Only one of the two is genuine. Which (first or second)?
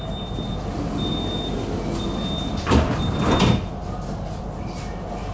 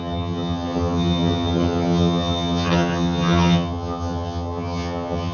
first